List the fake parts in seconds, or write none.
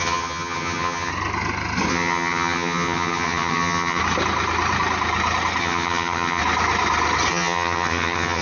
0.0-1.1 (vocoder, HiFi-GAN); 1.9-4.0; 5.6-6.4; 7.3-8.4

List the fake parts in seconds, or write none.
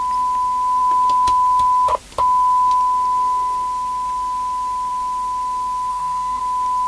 5.9-6.4 (codec, SNAC)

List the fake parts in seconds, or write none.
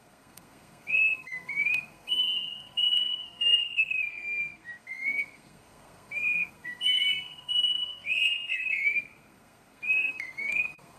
0.0-11.0 (codec, SNAC)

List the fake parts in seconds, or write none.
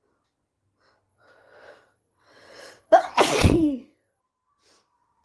1.1-4.2 (vocoder, WaveNeXt)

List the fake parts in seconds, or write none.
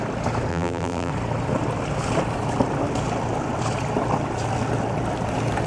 0.5-1.1 (vocoder, BigVGAN v2)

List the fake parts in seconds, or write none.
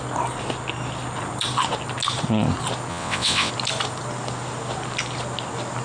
2.9-3.5 (vocoder, WaveNeXt)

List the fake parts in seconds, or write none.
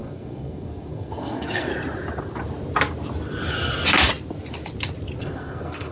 0.0-1.7 (codec, SNAC); 5.2-5.9